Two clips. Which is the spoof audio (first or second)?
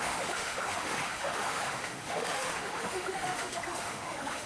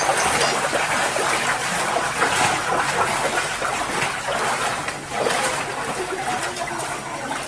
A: first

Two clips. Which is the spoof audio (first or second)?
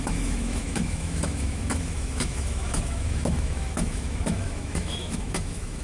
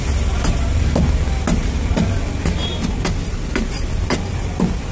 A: first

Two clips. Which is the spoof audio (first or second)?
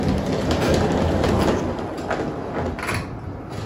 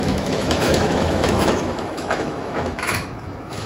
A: second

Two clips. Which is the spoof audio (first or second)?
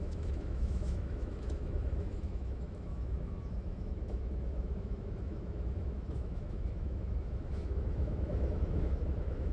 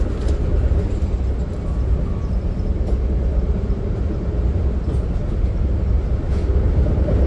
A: first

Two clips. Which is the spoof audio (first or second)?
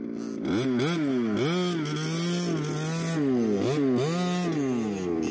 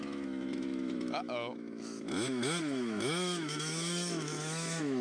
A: second